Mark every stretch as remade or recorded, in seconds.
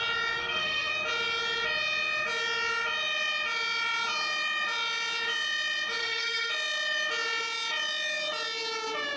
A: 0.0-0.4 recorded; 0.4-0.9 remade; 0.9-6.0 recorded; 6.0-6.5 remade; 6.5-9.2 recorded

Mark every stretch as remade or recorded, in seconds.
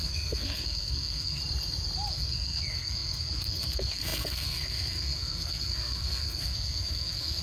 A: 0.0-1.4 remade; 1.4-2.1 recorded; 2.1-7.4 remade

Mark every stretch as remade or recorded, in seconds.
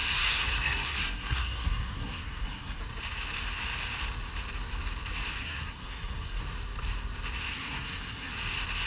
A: 0.0-2.8 remade; 2.8-5.4 recorded; 5.4-6.4 remade; 6.4-7.5 recorded; 7.5-8.3 remade; 8.3-8.9 recorded